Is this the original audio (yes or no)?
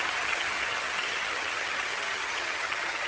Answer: no